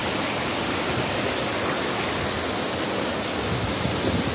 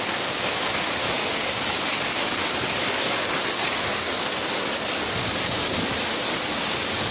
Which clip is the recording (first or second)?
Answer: first